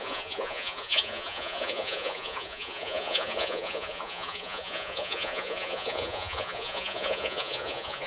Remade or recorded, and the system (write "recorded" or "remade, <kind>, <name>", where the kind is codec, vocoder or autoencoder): remade, vocoder, Vocos